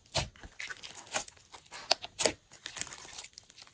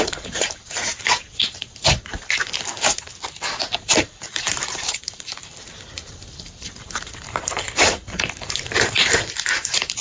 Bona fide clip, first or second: first